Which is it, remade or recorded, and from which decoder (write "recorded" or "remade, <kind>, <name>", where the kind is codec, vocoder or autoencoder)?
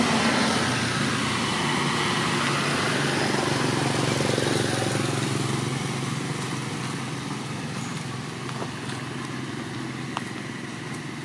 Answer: recorded